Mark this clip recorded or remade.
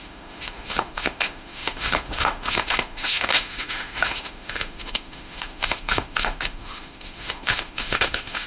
remade